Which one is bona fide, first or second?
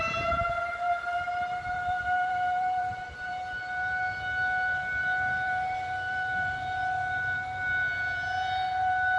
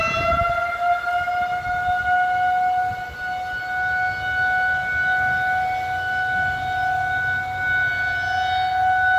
second